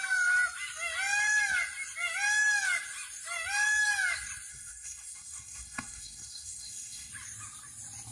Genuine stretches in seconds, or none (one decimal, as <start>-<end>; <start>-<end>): 0.0-4.5; 7.1-8.1